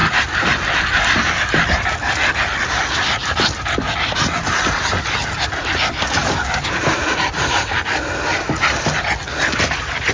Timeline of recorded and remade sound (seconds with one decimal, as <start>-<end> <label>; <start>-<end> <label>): 0.0-10.1 recorded